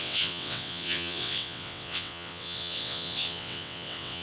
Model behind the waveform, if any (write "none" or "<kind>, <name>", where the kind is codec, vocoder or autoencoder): vocoder, WaveNeXt